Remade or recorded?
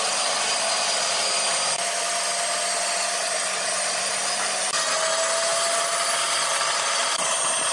recorded